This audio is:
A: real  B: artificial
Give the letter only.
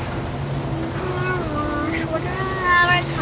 A